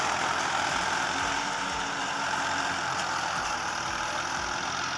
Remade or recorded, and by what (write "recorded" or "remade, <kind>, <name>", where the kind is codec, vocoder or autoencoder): remade, vocoder, BigVGAN v2